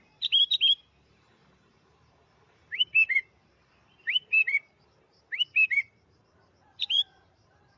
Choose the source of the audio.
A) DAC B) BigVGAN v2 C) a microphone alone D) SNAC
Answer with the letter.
B